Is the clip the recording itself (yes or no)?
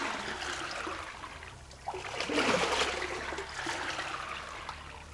yes